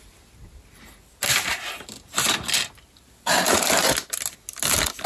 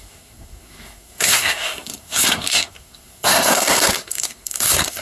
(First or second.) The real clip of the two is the first